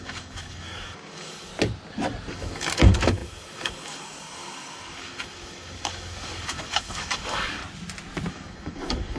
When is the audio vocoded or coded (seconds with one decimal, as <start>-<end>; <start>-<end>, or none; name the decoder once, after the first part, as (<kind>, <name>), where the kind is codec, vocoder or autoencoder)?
0.0-1.5 (codec, DAC); 2.3-7.6; 8.3-9.2